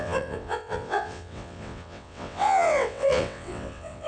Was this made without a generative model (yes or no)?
no